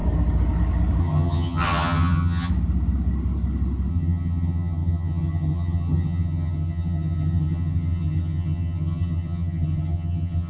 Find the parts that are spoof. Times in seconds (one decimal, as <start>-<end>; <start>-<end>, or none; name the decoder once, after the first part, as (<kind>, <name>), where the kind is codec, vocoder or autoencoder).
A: 1.0-2.5 (vocoder, HiFi-GAN); 3.9-10.5